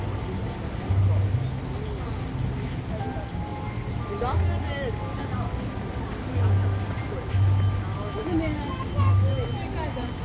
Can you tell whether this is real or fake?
real